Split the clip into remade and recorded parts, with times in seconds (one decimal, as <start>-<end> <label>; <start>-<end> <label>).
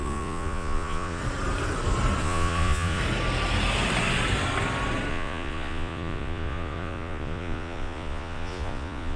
0.0-1.2 remade; 1.2-2.2 recorded; 2.2-3.0 remade; 3.0-5.1 recorded; 5.1-9.2 remade